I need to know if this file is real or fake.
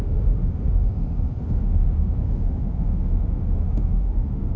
fake